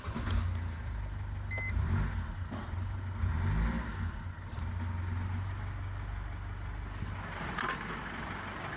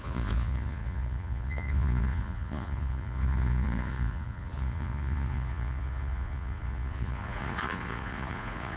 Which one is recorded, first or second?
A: first